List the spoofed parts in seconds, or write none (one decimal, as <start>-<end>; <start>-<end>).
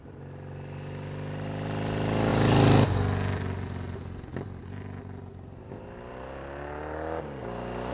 none